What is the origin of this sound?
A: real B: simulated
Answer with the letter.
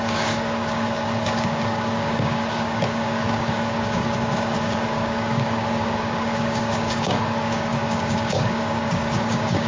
B